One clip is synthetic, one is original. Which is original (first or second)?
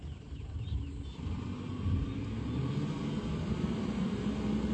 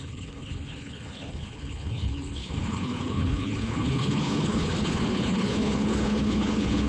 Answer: first